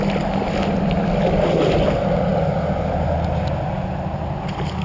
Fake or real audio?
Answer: real